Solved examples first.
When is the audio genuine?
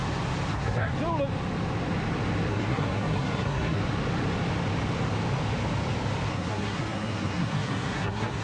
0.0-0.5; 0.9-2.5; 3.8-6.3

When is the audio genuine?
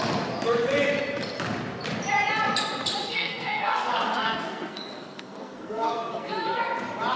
0.0-3.1; 6.6-7.2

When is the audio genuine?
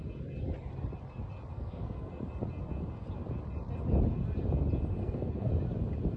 0.0-1.5; 2.1-5.0; 5.5-6.2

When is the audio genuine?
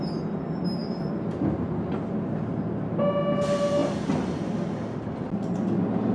0.0-6.1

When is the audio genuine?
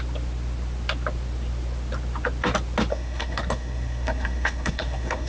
0.0-2.9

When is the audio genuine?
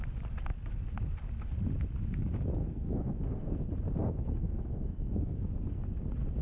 0.0-2.6; 3.6-4.0; 5.8-6.4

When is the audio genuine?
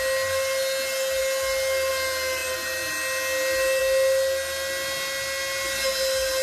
0.0-6.4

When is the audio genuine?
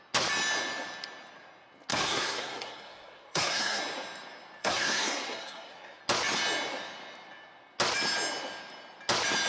0.0-1.9; 3.8-4.6; 6.0-9.5